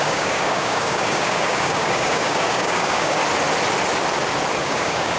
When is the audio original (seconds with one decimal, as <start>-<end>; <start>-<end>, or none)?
3.2-4.6